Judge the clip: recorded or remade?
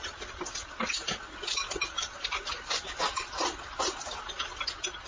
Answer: recorded